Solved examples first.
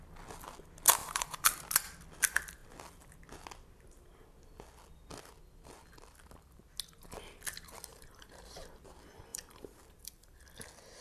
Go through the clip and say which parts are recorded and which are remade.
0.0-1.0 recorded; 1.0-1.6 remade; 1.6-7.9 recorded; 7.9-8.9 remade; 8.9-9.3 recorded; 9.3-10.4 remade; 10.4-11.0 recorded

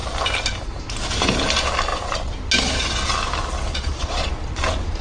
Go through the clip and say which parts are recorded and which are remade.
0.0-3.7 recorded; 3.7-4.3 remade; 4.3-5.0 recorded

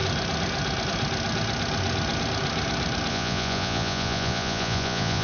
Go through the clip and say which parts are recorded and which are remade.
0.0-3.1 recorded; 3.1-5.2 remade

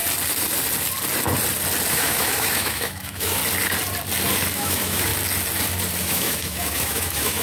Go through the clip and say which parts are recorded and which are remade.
0.0-1.9 recorded; 1.9-3.4 remade; 3.4-4.5 recorded; 4.5-5.1 remade; 5.1-6.0 recorded; 6.0-7.4 remade

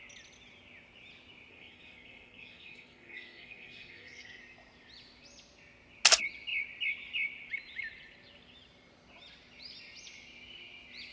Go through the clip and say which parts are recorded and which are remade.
0.0-1.5 recorded; 1.5-4.4 remade; 4.4-11.1 recorded